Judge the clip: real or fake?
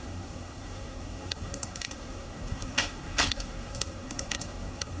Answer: fake